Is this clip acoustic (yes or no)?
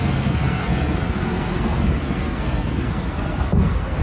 no